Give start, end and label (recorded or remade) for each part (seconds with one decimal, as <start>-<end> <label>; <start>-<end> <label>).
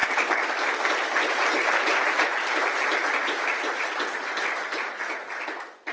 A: 0.0-3.2 recorded; 3.2-4.9 remade; 4.9-5.9 recorded